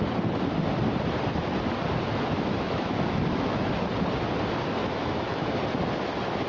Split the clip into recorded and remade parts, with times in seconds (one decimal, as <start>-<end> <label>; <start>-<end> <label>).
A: 0.0-2.5 recorded; 2.5-3.7 remade; 3.7-4.8 recorded; 4.8-5.5 remade; 5.5-6.5 recorded